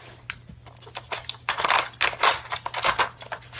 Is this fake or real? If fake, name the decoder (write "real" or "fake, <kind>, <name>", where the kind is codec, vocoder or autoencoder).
real